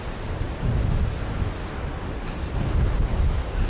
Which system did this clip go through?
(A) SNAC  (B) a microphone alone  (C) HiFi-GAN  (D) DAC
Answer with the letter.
B